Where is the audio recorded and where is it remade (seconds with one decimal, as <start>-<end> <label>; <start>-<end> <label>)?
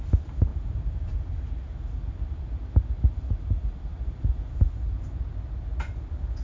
0.0-6.4 recorded